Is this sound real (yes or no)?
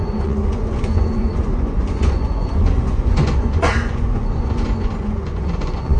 no